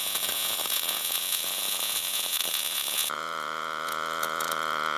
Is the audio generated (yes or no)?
yes